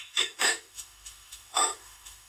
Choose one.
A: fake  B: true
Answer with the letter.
A